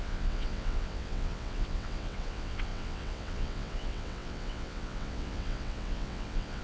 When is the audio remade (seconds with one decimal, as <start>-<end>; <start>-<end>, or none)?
0.0-6.6